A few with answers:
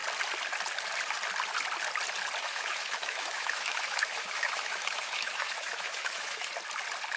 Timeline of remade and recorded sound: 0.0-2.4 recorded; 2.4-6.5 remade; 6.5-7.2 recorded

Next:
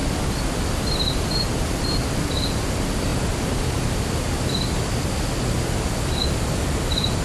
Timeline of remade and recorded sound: 0.0-7.2 recorded

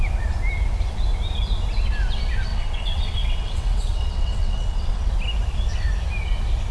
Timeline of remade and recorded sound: 0.0-2.5 recorded; 2.5-5.1 remade; 5.1-6.7 recorded

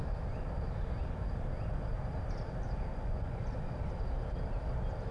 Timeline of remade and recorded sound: 0.0-2.9 recorded; 2.9-3.5 remade; 3.5-5.1 recorded

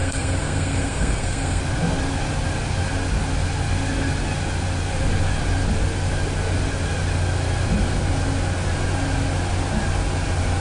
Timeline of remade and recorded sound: 0.0-1.6 remade; 1.6-10.6 recorded